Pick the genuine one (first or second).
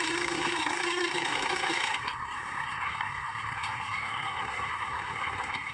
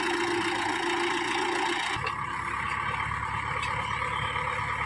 second